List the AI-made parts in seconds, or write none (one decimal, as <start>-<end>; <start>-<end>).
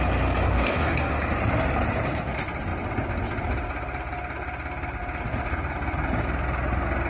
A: 0.5-1.1